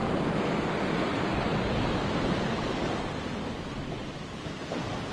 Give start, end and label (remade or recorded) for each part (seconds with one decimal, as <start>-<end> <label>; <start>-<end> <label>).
0.0-0.5 remade; 0.5-5.1 recorded